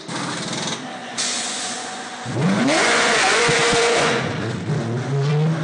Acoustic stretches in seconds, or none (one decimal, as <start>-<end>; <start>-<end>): 0.0-1.0; 4.3-5.6